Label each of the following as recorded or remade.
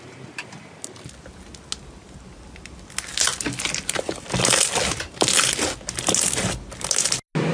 recorded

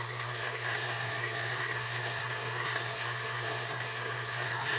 remade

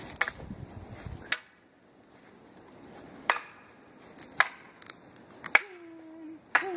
recorded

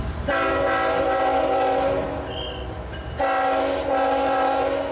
recorded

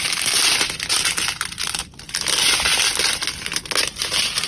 recorded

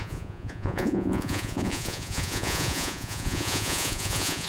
remade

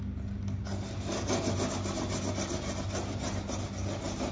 recorded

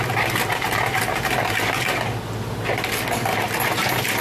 recorded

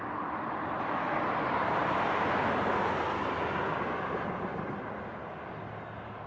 recorded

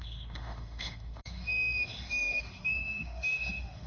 remade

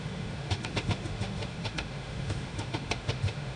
remade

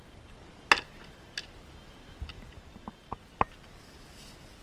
recorded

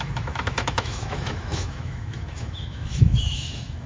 remade